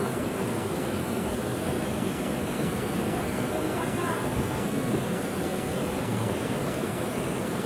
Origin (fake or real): fake